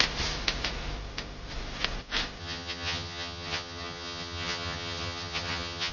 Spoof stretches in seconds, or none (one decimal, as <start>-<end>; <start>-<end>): 2.4-5.9